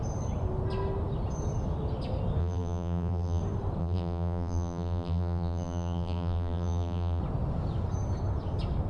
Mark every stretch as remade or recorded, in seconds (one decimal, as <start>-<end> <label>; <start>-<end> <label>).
0.0-2.4 recorded; 2.4-3.4 remade; 3.4-3.8 recorded; 3.8-7.2 remade; 7.2-8.9 recorded